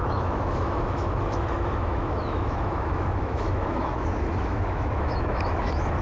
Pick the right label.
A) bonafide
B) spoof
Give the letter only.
B